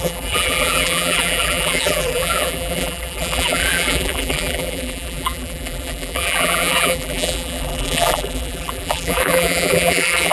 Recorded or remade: remade